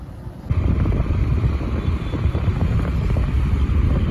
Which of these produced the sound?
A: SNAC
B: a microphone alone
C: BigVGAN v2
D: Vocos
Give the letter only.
B